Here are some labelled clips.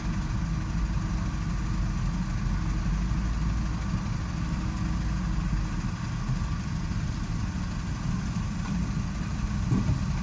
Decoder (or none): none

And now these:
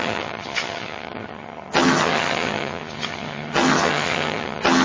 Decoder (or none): vocoder, HiFi-GAN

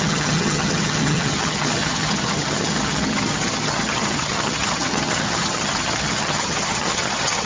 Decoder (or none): vocoder, HiFi-GAN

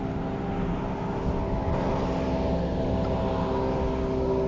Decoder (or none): none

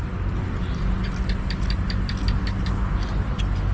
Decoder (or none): none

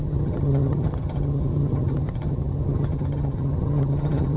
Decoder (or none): vocoder, HiFi-GAN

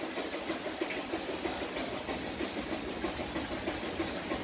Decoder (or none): none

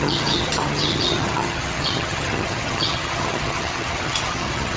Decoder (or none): vocoder, HiFi-GAN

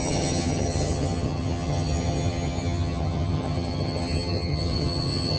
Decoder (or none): vocoder, HiFi-GAN